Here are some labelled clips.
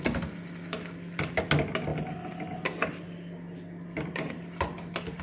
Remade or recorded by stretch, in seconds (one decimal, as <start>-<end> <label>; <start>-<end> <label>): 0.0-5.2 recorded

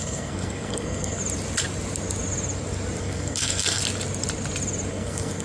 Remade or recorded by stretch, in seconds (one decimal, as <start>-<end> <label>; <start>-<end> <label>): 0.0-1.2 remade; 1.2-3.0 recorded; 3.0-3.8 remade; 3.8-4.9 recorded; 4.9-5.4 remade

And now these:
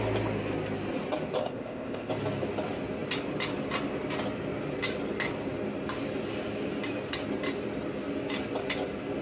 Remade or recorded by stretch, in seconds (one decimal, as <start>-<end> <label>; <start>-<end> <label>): 0.0-1.4 recorded; 1.4-2.1 remade; 2.1-9.2 recorded